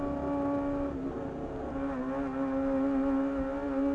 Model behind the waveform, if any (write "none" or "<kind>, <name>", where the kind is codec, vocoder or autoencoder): none